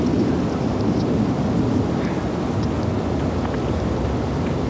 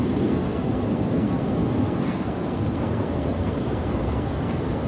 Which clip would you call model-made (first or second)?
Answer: second